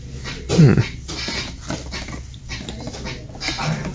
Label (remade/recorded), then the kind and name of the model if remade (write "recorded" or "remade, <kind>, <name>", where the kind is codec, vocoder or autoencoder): recorded